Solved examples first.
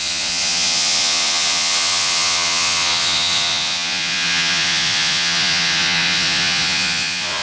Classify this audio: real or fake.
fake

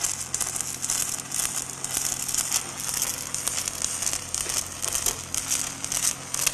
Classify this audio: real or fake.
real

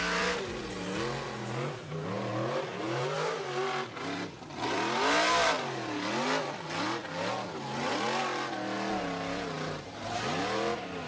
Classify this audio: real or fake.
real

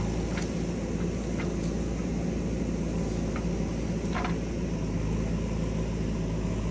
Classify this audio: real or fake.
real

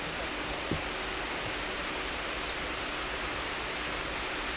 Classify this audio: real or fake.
real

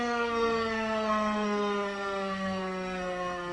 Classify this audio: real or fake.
fake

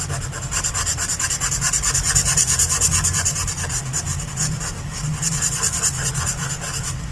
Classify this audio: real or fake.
real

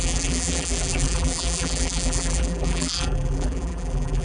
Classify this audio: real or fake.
fake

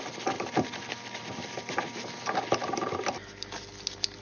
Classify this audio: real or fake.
real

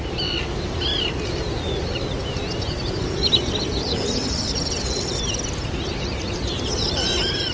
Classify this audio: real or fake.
real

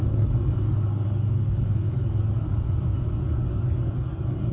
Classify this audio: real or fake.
fake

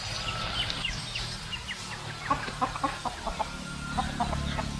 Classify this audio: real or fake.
real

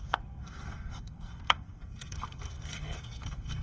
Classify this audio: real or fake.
fake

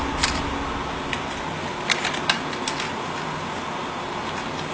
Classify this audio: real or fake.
real